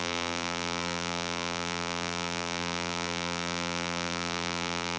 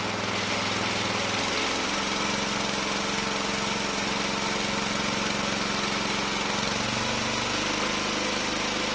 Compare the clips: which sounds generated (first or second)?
first